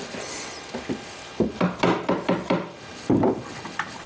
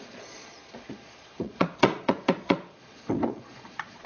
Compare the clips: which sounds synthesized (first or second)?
second